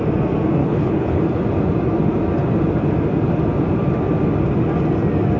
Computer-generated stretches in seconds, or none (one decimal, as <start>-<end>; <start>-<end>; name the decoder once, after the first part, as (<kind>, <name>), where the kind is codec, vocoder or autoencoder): 0.6-1.2 (codec, HILCodec)